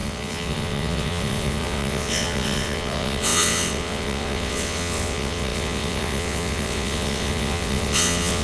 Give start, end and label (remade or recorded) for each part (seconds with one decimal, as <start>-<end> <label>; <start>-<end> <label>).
0.0-8.4 remade